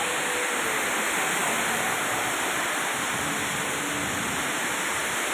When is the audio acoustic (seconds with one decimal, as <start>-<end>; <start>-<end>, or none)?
0.0-5.3